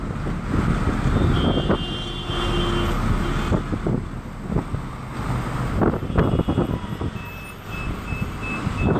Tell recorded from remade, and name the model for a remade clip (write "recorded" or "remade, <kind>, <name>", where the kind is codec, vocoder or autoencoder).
recorded